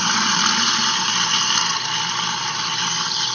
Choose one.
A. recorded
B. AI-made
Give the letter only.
A